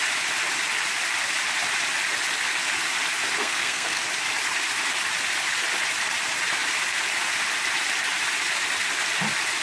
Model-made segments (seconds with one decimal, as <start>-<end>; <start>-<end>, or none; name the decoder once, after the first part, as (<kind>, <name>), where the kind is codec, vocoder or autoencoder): 3.4-4.0 (codec, SNAC)